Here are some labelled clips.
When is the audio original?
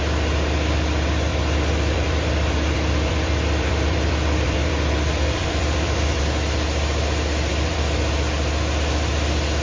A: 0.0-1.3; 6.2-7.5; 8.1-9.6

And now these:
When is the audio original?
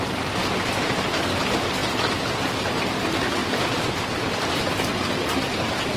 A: 0.0-3.4; 4.6-6.0